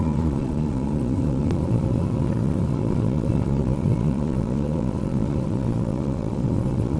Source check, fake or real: fake